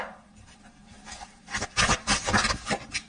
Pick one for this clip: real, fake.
fake